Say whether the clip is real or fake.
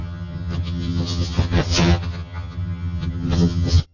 fake